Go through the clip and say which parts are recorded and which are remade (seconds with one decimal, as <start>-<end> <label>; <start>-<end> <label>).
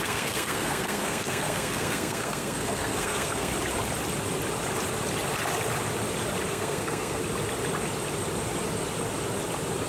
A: 0.0-3.5 remade; 3.5-6.5 recorded; 6.5-7.2 remade; 7.2-9.9 recorded